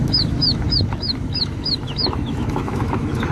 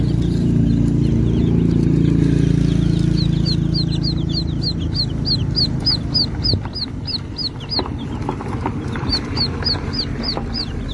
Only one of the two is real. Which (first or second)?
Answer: second